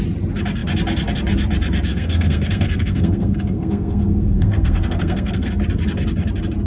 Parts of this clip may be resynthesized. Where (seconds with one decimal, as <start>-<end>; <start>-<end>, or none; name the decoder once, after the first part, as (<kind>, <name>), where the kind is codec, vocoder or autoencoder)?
1.9-5.5 (codec, SNAC)